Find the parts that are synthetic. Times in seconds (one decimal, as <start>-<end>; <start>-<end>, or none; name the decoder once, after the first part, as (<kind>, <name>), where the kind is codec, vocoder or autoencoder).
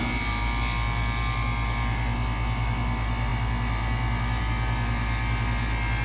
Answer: none